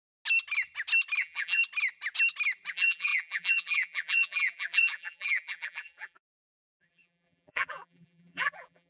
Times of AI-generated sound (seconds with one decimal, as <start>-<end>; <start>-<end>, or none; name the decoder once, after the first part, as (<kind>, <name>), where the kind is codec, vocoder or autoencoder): 1.2-1.6 (vocoder, BigVGAN v2); 2.7-8.9